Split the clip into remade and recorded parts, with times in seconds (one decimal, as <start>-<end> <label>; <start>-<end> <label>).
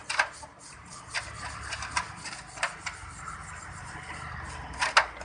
0.0-0.9 remade; 0.9-5.2 recorded